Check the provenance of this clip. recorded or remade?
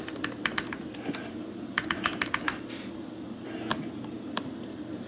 recorded